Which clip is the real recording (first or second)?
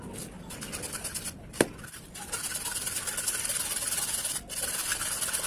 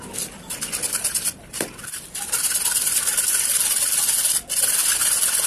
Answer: first